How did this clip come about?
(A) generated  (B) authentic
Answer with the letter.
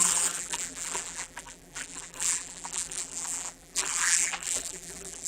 A